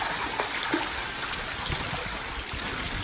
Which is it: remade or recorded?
recorded